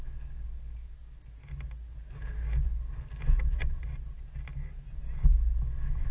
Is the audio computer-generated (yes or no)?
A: no